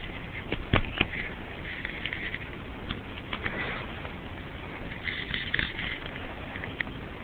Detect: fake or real real